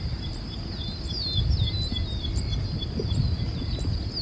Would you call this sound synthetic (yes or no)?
no